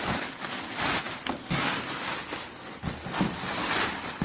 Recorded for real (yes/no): yes